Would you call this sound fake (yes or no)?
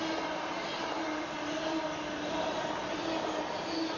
no